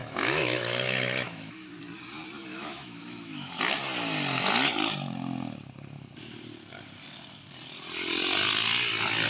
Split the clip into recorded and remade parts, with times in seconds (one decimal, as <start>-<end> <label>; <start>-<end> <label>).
0.0-1.8 remade; 1.8-2.5 recorded; 2.5-3.6 remade; 3.6-9.3 recorded